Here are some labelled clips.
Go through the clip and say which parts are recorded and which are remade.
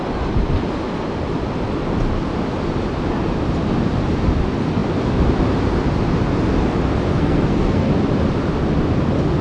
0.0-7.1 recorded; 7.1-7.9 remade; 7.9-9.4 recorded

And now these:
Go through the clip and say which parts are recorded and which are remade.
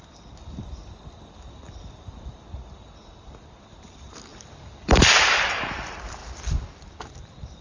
0.0-7.6 remade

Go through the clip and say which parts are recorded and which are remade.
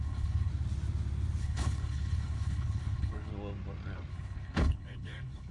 0.0-0.5 remade; 0.5-1.4 recorded; 1.4-3.3 remade; 3.3-4.1 recorded; 4.1-5.5 remade